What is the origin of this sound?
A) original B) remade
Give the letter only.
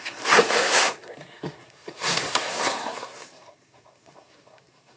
B